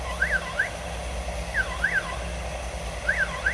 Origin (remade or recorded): recorded